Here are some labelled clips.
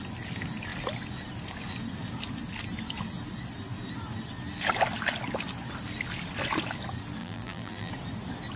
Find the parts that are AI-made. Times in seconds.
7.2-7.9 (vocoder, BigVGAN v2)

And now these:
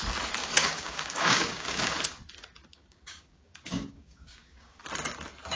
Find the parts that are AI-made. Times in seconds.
0.4-2.0 (codec, DAC); 2.7-4.8

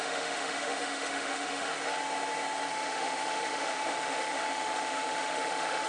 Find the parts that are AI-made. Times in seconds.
0.0-1.7 (autoencoder, DAC-VAE); 2.7-5.9

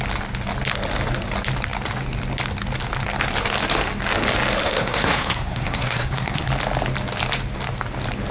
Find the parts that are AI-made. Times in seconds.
4.6-6.5 (codec, SNAC)

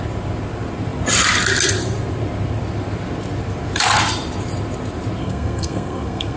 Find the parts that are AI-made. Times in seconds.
5.2-6.4 (codec, SNAC)

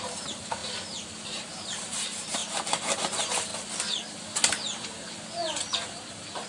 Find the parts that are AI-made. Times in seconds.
0.0-0.6 (vocoder, BigVGAN v2); 1.3-2.4; 3.0-3.5; 6.1-6.5